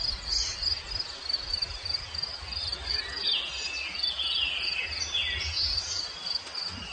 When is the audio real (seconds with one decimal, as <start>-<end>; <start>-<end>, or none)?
0.0-6.9